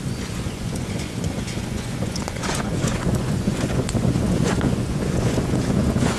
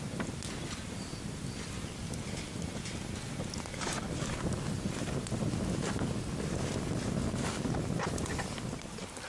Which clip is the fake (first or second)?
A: first